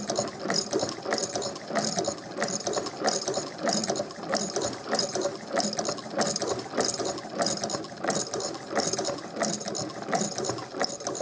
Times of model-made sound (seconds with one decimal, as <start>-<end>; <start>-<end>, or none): 3.8-6.2